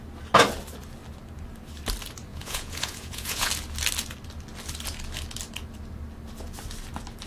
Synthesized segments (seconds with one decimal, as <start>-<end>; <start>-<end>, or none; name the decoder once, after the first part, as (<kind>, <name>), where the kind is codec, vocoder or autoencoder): 2.3-3.5 (vocoder, Vocos)